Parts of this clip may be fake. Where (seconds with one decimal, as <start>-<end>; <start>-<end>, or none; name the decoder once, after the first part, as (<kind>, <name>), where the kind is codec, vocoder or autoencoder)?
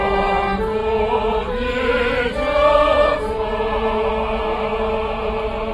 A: 0.8-1.9 (vocoder, Vocos); 3.1-4.1; 4.7-5.3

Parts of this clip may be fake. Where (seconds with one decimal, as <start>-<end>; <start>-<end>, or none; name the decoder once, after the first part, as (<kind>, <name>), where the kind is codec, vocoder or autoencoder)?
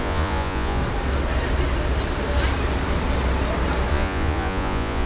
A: 0.0-0.8 (vocoder, Vocos); 3.9-5.1